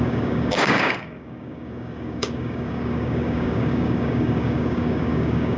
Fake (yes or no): yes